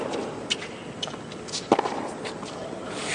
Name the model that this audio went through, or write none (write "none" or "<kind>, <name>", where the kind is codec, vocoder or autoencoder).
none